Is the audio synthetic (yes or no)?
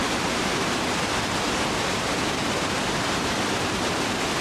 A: no